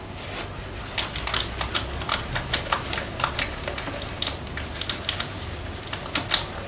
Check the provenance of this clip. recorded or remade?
recorded